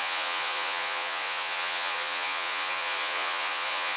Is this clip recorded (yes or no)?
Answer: no